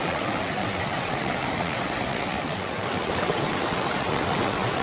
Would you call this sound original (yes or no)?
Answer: no